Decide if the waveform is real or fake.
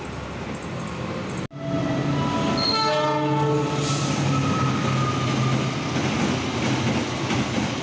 real